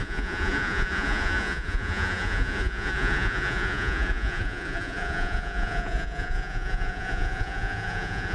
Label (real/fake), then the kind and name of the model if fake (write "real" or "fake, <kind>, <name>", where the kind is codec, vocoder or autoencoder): fake, vocoder, Vocos